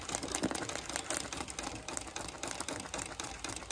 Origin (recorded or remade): recorded